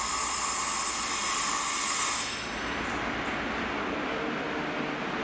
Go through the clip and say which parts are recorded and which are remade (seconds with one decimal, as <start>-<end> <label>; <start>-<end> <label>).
0.0-5.2 recorded

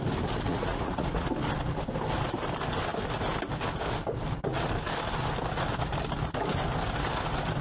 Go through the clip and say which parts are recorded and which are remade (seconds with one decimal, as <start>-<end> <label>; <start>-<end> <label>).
0.0-0.5 recorded; 0.5-1.3 remade; 1.3-7.6 recorded

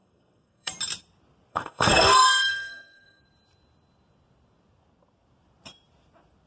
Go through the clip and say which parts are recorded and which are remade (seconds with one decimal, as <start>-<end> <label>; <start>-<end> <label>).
0.0-0.7 remade; 0.7-1.5 recorded; 1.5-3.2 remade; 3.2-6.5 recorded

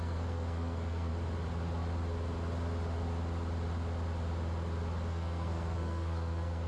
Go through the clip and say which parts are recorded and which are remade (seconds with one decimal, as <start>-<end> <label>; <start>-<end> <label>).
0.0-1.1 remade; 1.1-5.1 recorded; 5.1-6.7 remade

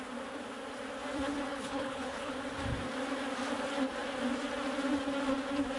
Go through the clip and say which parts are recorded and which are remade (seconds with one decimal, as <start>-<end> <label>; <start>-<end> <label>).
0.0-1.5 recorded; 1.5-2.3 remade; 2.3-5.8 recorded

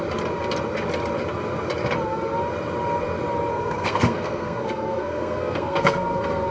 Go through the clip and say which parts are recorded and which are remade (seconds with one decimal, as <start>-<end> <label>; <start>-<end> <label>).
0.0-3.5 recorded; 3.5-6.5 remade

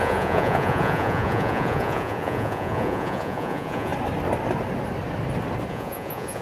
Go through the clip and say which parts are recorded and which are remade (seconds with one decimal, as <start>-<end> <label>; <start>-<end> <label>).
0.0-3.9 remade; 3.9-5.7 recorded; 5.7-6.4 remade